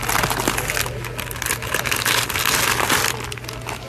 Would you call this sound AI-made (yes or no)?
no